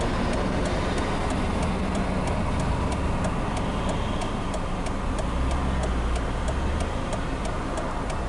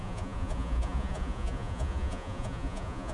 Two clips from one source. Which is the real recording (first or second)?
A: first